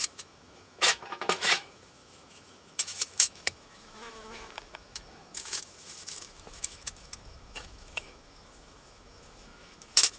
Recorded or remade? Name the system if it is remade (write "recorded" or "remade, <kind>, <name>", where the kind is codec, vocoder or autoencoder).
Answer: remade, autoencoder, DAC-VAE